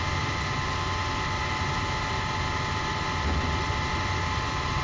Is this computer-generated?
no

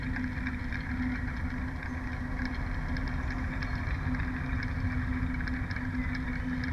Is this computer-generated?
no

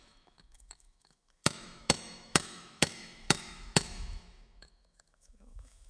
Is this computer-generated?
yes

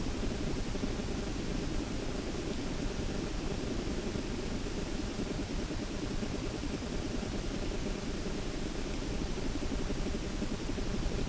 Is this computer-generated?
no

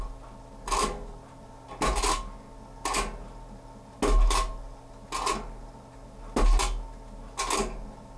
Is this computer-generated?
no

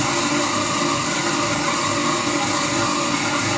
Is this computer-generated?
no